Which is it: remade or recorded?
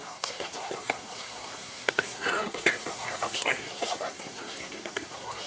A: remade